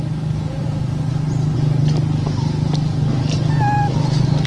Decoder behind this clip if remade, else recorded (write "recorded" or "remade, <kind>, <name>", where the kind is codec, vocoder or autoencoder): recorded